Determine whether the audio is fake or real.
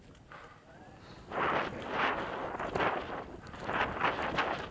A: real